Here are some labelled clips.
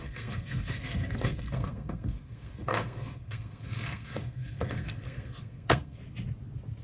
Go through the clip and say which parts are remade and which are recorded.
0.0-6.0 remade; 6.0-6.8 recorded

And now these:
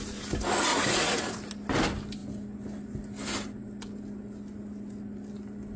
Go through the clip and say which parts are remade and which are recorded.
0.0-0.7 recorded; 0.7-1.5 remade; 1.5-5.8 recorded

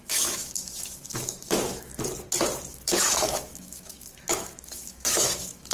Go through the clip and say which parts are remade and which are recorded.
0.0-1.9 remade; 1.9-2.7 recorded; 2.7-5.7 remade

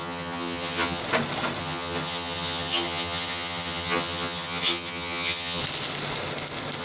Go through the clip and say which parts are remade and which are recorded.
0.0-1.0 remade; 1.0-1.6 recorded; 1.6-5.6 remade; 5.6-6.8 recorded